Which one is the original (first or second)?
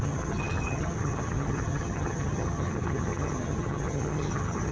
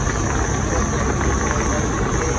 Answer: second